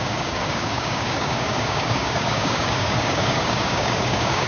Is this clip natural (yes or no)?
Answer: no